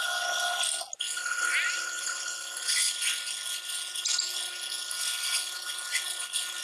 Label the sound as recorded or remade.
recorded